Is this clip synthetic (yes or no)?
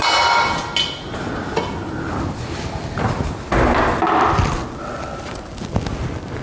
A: no